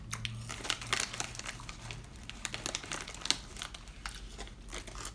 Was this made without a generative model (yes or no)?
yes